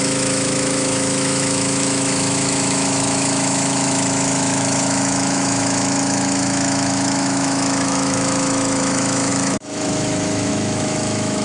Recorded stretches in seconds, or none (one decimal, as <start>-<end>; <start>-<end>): none